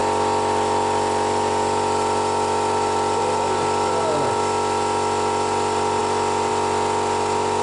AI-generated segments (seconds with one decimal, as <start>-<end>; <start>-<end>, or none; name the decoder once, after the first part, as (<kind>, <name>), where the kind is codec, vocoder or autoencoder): none